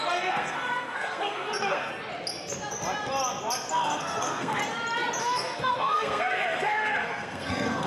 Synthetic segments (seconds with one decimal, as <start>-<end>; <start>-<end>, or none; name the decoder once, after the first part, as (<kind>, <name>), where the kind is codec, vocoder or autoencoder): 0.0-1.9 (codec, SNAC); 3.7-4.6; 5.2-7.9